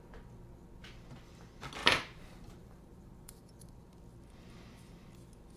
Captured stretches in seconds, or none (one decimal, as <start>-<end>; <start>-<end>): 0.0-1.8; 4.0-5.6